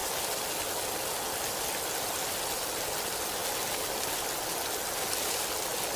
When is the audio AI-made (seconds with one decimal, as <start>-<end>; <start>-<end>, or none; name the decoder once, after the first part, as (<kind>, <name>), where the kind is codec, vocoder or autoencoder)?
none